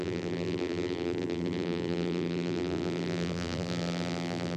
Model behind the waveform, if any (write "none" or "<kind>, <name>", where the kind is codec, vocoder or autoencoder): vocoder, BigVGAN v2